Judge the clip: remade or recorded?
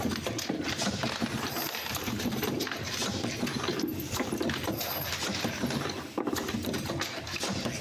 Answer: remade